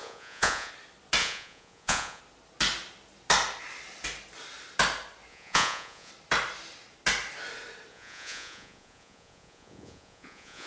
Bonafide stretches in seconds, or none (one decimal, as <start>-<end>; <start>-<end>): 0.7-1.2; 2.2-5.3; 6.1-7.9